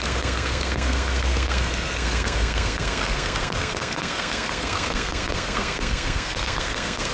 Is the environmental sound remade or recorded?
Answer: remade